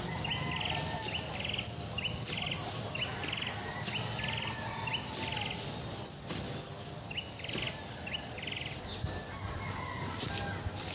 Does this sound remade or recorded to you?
recorded